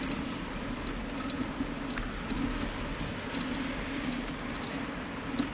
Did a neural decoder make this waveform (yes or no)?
no